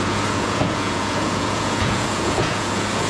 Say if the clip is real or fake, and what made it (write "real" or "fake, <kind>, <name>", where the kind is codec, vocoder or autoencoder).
fake, vocoder, Vocos